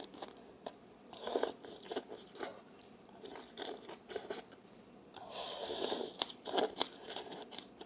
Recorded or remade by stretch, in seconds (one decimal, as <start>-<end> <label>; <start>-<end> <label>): 0.0-7.9 remade

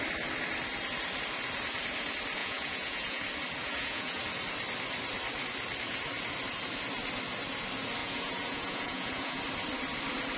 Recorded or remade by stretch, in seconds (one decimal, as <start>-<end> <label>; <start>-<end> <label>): 0.0-2.4 recorded; 2.4-3.2 remade; 3.2-3.6 recorded; 3.6-4.2 remade; 4.2-8.0 recorded; 8.0-9.4 remade; 9.4-10.4 recorded